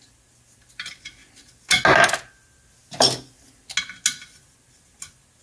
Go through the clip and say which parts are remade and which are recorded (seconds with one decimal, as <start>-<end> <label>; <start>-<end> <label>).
0.0-5.4 recorded